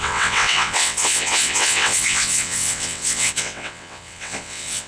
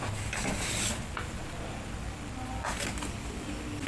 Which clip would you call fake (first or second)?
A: first